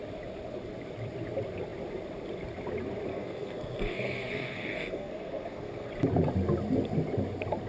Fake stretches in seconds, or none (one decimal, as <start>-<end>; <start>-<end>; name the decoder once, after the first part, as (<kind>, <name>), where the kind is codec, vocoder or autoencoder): 3.1-5.9 (codec, SNAC)